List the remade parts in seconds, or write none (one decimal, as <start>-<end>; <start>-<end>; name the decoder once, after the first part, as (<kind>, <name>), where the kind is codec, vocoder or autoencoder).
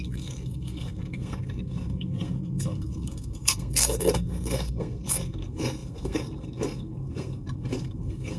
0.0-8.4 (codec, SNAC)